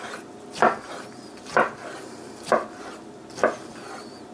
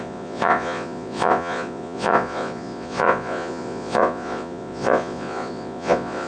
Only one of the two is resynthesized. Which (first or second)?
second